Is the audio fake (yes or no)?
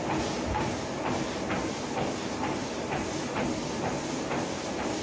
no